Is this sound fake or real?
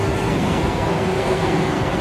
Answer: fake